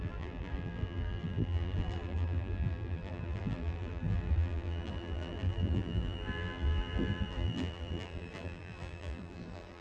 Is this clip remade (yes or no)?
yes